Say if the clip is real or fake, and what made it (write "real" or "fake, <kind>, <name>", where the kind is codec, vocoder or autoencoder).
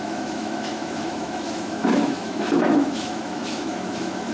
fake, autoencoder, DAC-VAE